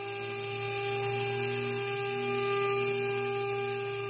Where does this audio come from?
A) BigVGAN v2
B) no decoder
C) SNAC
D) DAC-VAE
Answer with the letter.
B